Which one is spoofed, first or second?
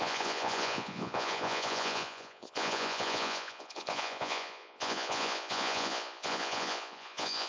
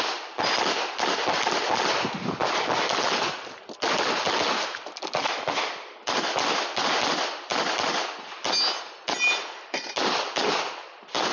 first